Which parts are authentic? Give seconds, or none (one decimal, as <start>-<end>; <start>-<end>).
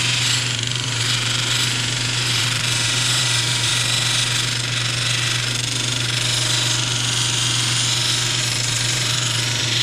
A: 3.7-8.4